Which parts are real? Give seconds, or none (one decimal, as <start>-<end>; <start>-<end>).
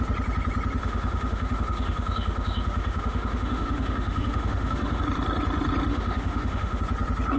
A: 0.0-0.8; 5.0-5.9; 6.8-7.4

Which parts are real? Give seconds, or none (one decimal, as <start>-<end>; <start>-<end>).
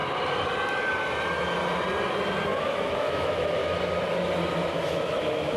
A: 0.0-2.6; 3.6-4.7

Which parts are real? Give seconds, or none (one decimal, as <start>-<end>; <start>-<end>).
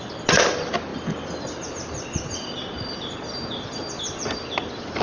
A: 0.0-5.0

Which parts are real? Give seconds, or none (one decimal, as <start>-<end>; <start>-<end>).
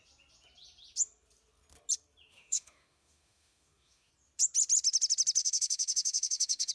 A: 0.0-2.3; 4.1-5.4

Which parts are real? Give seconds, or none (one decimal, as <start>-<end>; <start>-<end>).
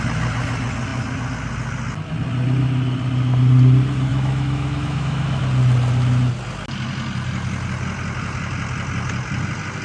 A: 0.0-4.1; 5.4-9.8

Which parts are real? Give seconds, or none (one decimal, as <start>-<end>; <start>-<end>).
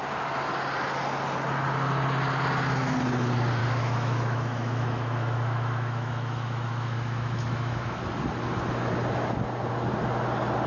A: 0.0-3.6; 8.0-10.7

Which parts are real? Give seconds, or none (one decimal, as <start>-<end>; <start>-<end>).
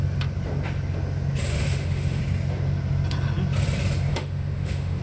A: 0.0-1.5; 2.2-4.1